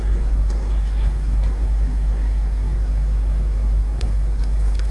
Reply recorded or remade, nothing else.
remade